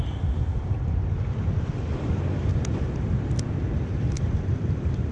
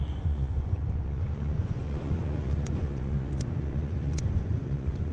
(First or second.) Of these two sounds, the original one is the first